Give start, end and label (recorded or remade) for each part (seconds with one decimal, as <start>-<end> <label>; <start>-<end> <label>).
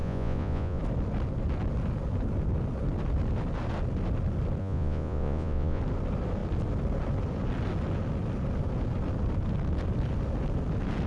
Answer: 0.0-0.8 remade; 0.8-4.6 recorded; 4.6-5.8 remade; 5.8-11.1 recorded